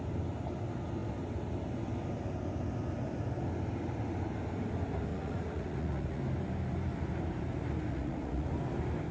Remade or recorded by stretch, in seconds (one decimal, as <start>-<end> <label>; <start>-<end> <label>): 0.0-5.1 recorded; 5.1-6.2 remade; 6.2-7.9 recorded; 7.9-8.5 remade; 8.5-9.1 recorded